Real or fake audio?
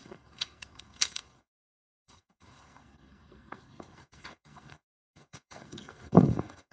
fake